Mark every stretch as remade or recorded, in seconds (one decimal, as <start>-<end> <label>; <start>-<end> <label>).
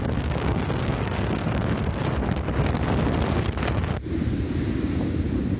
0.0-1.8 remade; 1.8-5.6 recorded